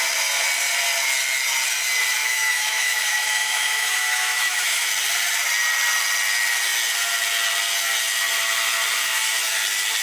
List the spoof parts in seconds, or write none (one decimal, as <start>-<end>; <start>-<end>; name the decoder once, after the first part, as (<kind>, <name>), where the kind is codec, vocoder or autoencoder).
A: 2.2-4.9 (autoencoder, DAC-VAE)

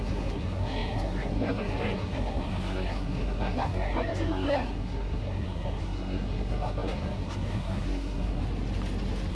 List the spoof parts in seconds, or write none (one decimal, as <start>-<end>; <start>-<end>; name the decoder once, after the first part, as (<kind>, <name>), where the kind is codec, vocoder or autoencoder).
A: 0.0-8.4 (codec, SNAC)

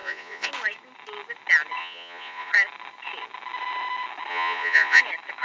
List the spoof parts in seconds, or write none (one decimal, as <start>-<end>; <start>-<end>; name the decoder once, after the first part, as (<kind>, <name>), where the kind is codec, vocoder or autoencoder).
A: 0.0-0.5 (vocoder, Vocos); 1.8-2.5; 4.3-5.0

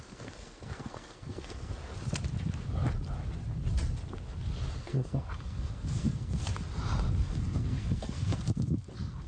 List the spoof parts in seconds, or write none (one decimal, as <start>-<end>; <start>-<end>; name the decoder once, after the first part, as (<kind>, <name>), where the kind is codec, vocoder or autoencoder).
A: 0.0-1.8 (codec, SNAC); 4.8-6.5; 7.2-9.3

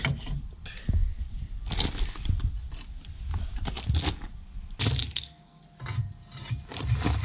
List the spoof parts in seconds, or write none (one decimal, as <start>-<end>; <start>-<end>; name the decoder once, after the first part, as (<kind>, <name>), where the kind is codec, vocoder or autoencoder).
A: 5.0-5.6 (codec, SNAC)